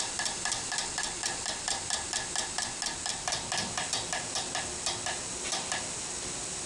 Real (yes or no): yes